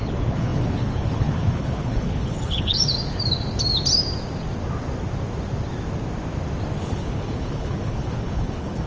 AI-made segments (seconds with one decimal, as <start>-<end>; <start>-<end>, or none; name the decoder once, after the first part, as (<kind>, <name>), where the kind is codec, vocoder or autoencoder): 0.0-2.8 (codec, HILCodec); 6.8-8.9